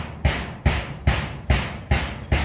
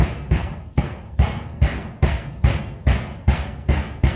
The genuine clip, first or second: first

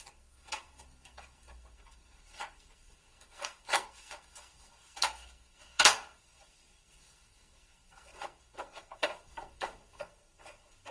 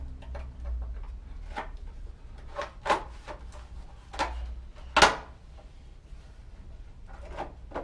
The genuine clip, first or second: second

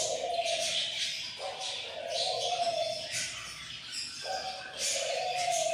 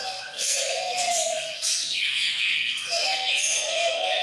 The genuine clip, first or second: first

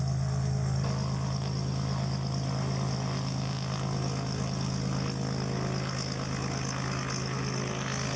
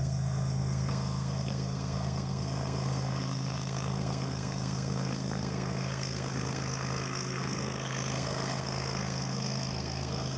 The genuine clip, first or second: first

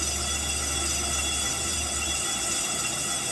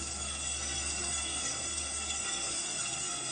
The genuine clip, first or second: first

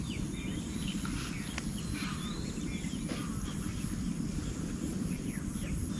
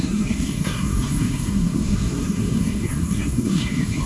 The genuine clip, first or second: first